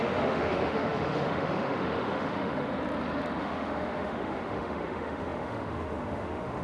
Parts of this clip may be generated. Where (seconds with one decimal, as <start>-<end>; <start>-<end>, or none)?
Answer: 0.0-2.7; 3.4-6.6